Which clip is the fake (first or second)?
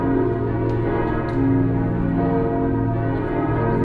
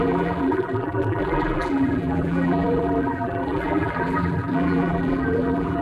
second